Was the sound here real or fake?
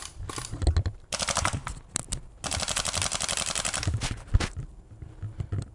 real